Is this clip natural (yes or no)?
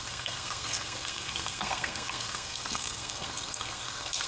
no